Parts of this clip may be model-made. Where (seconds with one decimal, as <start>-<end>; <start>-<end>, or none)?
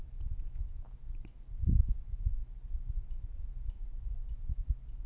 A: none